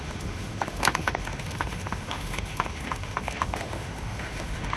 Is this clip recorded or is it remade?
remade